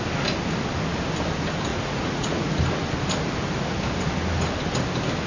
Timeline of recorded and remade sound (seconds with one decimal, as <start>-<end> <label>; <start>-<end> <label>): 0.0-1.7 recorded; 1.7-2.6 remade; 2.6-5.3 recorded